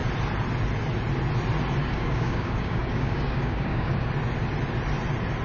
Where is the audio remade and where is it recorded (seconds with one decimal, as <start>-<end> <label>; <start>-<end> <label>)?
0.0-1.8 recorded; 1.8-4.1 remade; 4.1-5.4 recorded